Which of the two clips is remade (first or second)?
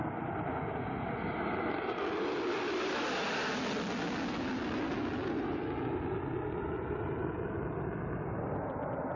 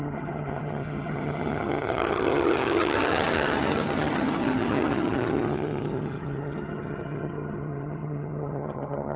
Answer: second